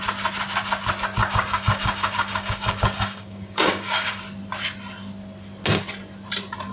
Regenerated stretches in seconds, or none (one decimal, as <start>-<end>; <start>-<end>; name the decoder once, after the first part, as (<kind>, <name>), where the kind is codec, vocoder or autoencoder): 1.2-4.2 (codec, DAC)